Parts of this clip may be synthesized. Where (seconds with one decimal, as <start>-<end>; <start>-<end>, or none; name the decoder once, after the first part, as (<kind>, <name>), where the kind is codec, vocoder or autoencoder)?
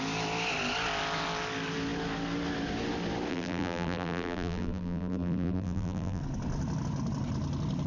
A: 3.3-6.2 (vocoder, BigVGAN v2)